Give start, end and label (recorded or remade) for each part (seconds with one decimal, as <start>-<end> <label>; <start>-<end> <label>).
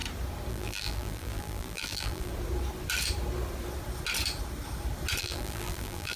0.0-0.5 recorded; 0.5-2.3 remade; 2.3-5.2 recorded; 5.2-6.2 remade